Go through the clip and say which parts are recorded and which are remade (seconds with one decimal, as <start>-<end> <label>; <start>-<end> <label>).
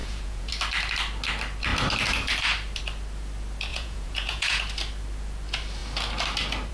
0.0-0.5 remade; 0.5-3.7 recorded; 3.7-4.6 remade; 4.6-6.7 recorded